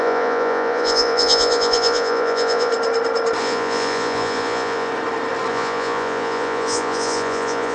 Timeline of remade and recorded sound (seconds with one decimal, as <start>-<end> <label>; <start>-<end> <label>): 0.0-2.7 remade; 2.7-3.4 recorded; 3.4-4.9 remade; 4.9-5.5 recorded; 5.5-7.7 remade